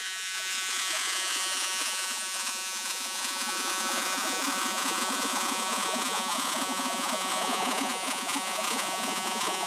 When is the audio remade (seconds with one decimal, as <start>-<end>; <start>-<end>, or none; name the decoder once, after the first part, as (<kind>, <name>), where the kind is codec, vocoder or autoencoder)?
0.0-9.7 (vocoder, Vocos)